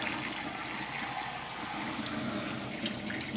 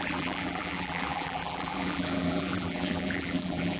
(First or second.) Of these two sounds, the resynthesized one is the second